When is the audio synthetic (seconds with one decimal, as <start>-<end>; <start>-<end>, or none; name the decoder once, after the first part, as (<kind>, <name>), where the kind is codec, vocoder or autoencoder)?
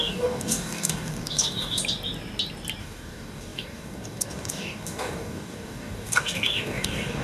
0.0-1.8 (codec, DAC); 2.8-7.2